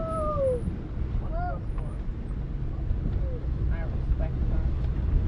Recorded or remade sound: recorded